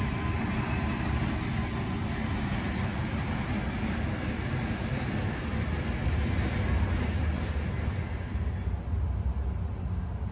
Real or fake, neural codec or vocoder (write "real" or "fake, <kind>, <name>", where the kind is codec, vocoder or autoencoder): real